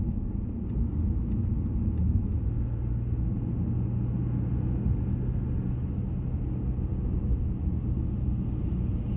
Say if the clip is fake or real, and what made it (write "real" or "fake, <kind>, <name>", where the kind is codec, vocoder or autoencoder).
real